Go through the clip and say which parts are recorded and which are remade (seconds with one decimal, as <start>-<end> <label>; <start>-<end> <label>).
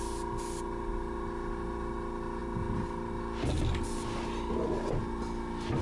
0.0-5.8 recorded